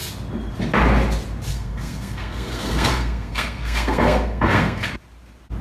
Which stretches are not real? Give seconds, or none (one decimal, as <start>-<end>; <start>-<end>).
1.5-4.9